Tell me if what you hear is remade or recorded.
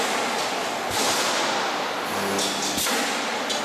recorded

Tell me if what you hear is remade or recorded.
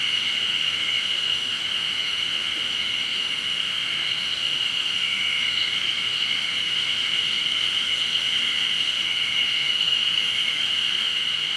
remade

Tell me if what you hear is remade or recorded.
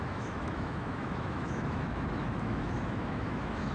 remade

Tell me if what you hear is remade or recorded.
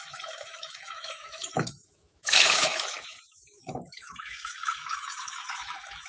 remade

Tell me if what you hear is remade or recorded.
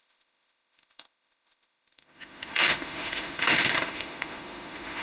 remade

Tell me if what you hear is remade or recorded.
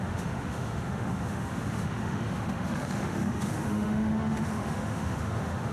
remade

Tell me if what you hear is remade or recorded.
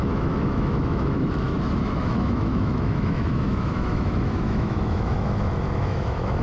remade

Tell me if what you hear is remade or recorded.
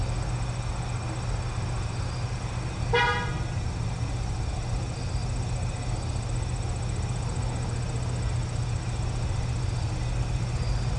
recorded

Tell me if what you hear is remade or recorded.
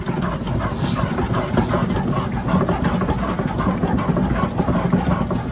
recorded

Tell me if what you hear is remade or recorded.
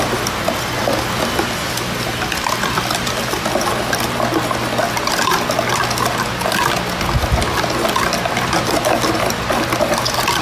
recorded